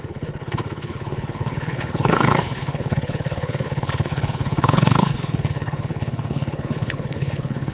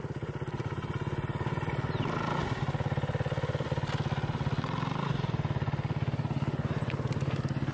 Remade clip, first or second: first